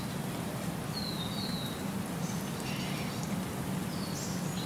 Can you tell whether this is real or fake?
real